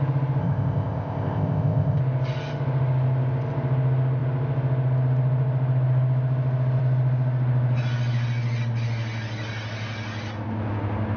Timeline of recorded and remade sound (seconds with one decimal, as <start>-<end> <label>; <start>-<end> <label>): 0.0-0.4 recorded; 0.4-2.0 remade; 2.0-11.2 recorded